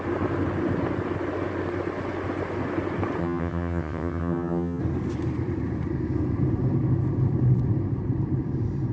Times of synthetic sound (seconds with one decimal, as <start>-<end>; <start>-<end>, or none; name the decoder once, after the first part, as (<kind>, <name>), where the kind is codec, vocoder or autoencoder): 3.2-4.8 (vocoder, HiFi-GAN)